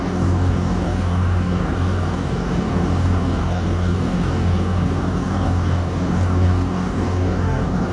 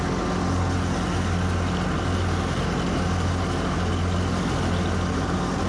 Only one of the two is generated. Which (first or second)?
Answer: first